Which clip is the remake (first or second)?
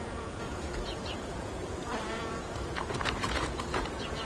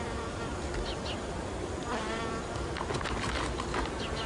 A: first